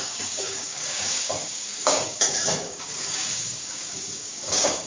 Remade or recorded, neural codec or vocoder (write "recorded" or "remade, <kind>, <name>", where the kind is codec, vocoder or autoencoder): remade, codec, DAC